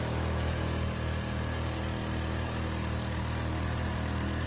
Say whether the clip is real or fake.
real